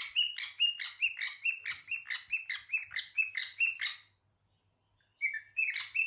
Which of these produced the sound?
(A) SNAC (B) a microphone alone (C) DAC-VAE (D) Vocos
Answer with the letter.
B